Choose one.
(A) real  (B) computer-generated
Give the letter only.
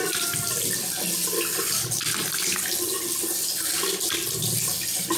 A